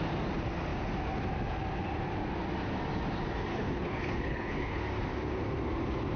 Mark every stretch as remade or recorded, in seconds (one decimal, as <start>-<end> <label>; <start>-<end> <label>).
0.0-3.5 recorded; 3.5-4.8 remade; 4.8-6.2 recorded